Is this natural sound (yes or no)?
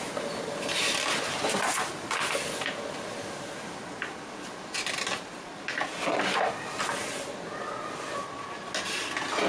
yes